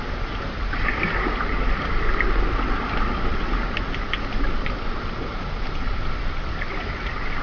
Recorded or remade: recorded